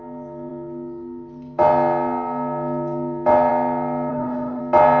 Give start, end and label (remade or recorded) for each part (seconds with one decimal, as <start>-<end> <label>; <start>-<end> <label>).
0.0-4.1 recorded; 4.1-4.6 remade; 4.6-5.0 recorded

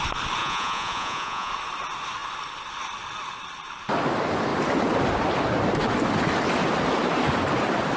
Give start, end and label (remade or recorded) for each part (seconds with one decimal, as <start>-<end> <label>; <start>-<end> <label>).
0.0-0.4 recorded; 0.4-1.5 remade; 1.5-8.0 recorded

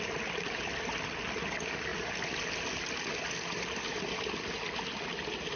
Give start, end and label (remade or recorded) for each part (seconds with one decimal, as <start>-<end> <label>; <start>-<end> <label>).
0.0-5.6 recorded

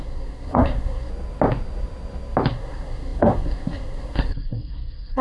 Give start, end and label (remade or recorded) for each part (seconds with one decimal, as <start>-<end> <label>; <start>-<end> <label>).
0.0-1.1 remade; 1.1-2.5 recorded; 2.5-5.2 remade

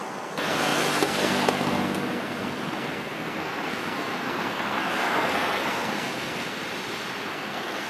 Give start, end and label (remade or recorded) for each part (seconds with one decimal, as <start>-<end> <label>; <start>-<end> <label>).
0.0-6.6 remade; 6.6-7.3 recorded; 7.3-7.9 remade

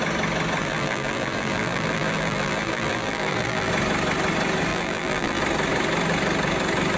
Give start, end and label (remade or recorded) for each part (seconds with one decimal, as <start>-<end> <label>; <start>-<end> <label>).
0.0-0.6 recorded; 0.6-3.7 remade; 3.7-4.7 recorded; 4.7-5.4 remade; 5.4-7.0 recorded

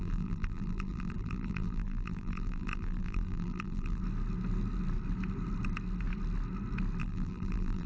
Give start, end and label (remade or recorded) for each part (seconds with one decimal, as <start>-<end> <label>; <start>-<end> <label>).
0.0-4.0 remade; 4.0-7.0 recorded; 7.0-7.9 remade

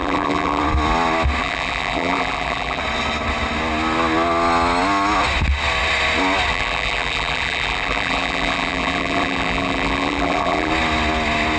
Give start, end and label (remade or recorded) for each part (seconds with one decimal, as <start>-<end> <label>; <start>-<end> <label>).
0.0-0.6 remade; 0.6-1.4 recorded; 1.4-2.8 remade; 2.8-6.5 recorded; 6.5-10.7 remade; 10.7-11.6 recorded